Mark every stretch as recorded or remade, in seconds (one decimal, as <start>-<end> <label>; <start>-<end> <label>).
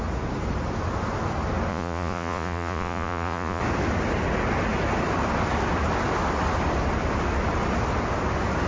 0.0-1.7 recorded; 1.7-3.6 remade; 3.6-8.7 recorded